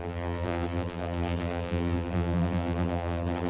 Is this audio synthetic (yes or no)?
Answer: yes